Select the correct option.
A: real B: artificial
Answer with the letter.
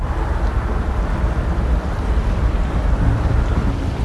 B